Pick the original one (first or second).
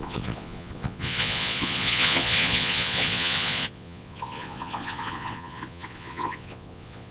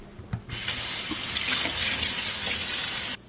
second